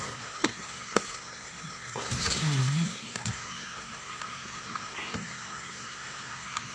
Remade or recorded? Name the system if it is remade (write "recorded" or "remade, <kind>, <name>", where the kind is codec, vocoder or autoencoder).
remade, codec, SNAC